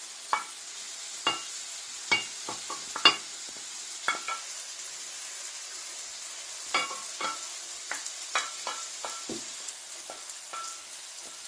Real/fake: real